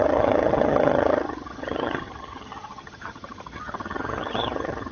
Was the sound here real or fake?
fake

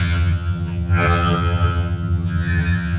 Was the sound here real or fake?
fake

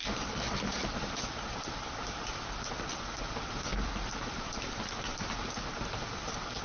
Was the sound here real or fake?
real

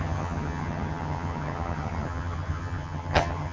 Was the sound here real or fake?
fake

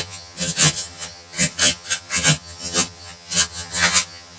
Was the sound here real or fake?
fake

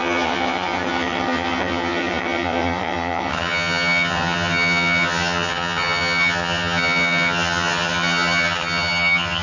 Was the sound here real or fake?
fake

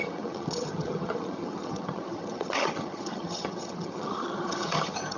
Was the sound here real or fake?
fake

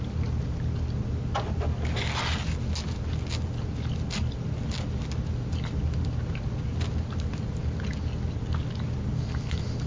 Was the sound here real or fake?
real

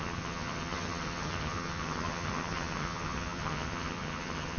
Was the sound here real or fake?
fake